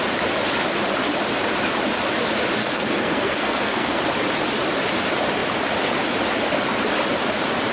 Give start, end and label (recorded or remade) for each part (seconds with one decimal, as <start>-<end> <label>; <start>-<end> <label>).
0.0-2.6 recorded; 2.6-4.0 remade; 4.0-7.7 recorded